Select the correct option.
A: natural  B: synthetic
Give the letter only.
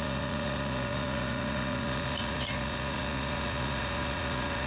B